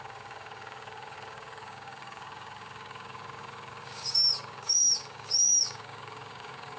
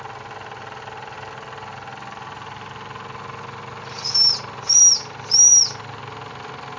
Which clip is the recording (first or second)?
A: second